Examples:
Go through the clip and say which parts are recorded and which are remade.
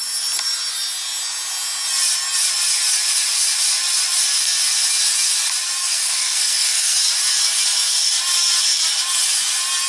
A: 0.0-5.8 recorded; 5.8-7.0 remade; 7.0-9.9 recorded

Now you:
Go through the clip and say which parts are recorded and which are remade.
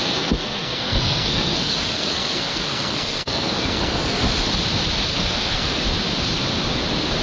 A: 0.0-4.2 remade; 4.2-5.1 recorded; 5.1-5.8 remade; 5.8-7.2 recorded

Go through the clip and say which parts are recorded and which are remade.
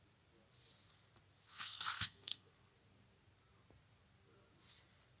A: 0.0-1.5 recorded; 1.5-2.5 remade; 2.5-5.2 recorded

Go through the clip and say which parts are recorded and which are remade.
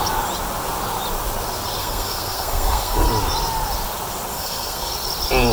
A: 0.0-1.8 recorded; 1.8-3.1 remade; 3.1-4.3 recorded; 4.3-4.9 remade; 4.9-5.5 recorded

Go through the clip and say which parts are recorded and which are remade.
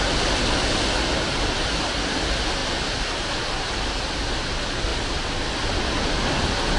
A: 0.0-6.8 recorded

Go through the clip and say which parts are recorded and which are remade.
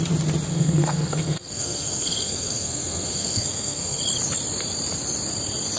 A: 0.0-0.5 recorded; 0.5-4.0 remade; 4.0-5.8 recorded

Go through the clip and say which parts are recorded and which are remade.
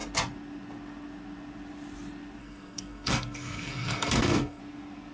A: 0.0-2.4 recorded; 2.4-4.6 remade; 4.6-5.1 recorded